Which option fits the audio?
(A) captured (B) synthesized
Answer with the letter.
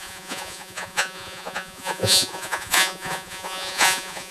B